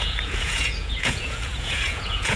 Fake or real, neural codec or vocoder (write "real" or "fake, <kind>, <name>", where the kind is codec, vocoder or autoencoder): fake, vocoder, Vocos